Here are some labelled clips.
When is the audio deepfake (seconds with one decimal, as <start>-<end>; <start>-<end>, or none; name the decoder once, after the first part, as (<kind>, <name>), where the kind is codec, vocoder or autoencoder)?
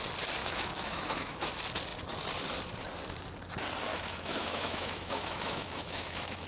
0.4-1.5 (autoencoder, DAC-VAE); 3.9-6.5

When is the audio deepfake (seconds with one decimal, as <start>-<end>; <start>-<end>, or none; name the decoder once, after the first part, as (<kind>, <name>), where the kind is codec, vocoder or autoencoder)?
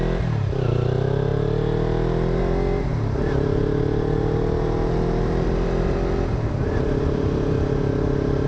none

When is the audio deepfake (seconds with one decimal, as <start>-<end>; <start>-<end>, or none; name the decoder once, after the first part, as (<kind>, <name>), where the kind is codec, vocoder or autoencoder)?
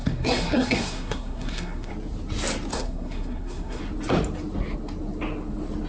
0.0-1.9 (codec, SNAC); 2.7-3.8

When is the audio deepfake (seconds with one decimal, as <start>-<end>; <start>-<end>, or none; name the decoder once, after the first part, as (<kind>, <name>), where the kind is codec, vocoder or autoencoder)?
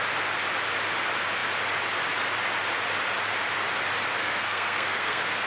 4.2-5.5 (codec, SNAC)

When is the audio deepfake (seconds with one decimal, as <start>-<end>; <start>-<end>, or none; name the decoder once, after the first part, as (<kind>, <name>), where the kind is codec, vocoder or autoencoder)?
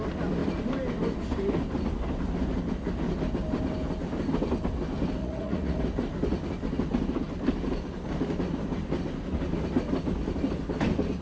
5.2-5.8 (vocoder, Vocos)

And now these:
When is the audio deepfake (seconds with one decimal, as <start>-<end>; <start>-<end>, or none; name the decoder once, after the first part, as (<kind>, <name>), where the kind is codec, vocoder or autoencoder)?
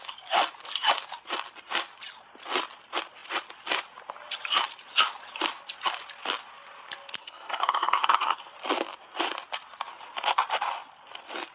7.2-8.4 (codec, SNAC)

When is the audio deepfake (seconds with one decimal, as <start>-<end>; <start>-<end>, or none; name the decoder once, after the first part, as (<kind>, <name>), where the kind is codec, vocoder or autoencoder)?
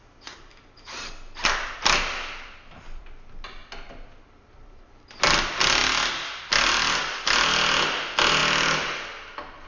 none